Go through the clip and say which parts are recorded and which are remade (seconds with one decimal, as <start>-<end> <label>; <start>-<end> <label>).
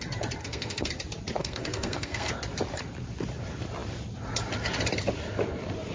0.0-0.4 recorded; 0.4-0.9 remade; 0.9-1.4 recorded; 1.4-2.3 remade; 2.3-5.9 recorded